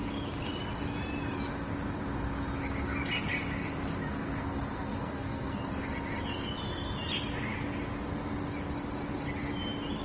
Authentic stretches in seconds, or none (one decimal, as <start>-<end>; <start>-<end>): 0.0-4.1; 5.6-10.0